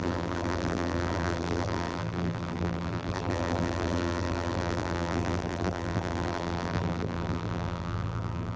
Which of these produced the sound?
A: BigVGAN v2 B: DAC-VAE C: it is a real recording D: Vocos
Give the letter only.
A